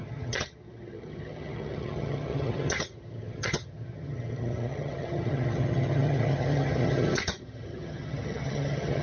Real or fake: fake